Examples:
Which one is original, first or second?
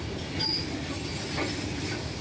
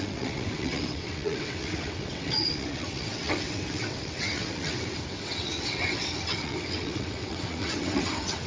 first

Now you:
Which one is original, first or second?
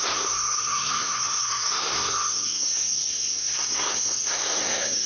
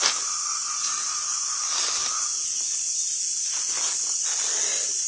second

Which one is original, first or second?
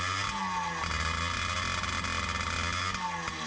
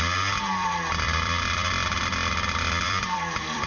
first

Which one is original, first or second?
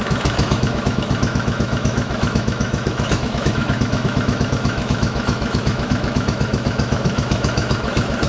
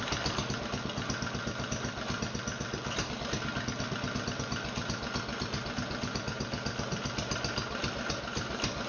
second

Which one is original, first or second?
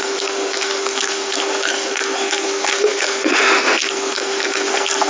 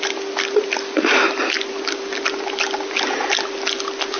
second